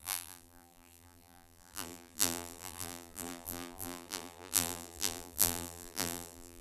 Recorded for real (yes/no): no